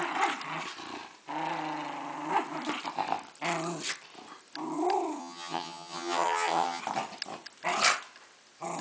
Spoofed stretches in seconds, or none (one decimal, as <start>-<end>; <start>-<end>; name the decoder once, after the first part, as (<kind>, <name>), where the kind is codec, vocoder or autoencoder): 5.2-6.8 (vocoder, HiFi-GAN)